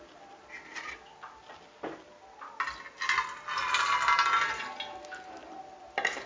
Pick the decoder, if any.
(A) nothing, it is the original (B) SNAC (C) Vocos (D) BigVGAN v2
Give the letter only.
A